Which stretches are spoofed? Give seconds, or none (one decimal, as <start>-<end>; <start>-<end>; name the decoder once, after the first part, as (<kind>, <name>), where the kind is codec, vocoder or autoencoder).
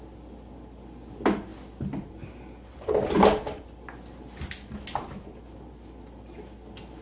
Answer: none